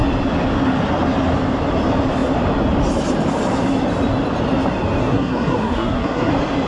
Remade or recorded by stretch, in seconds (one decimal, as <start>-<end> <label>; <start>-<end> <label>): 0.0-5.0 recorded; 5.0-6.3 remade; 6.3-6.7 recorded